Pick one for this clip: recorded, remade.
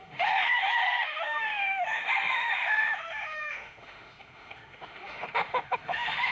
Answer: remade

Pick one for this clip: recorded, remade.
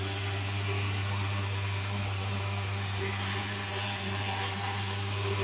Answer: recorded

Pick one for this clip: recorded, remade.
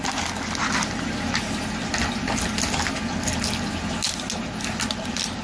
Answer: recorded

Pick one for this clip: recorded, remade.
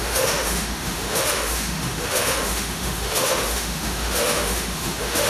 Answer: remade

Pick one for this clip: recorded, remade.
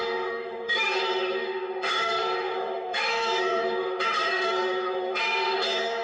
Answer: remade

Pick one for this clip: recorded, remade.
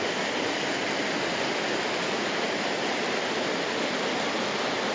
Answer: recorded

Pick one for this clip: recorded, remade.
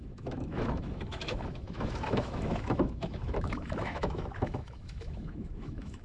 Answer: remade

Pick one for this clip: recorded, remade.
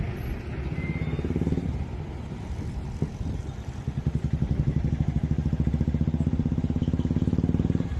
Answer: recorded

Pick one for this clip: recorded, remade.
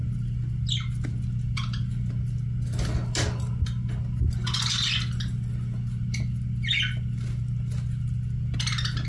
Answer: recorded